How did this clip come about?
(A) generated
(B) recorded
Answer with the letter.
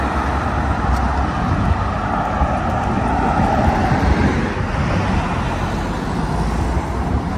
B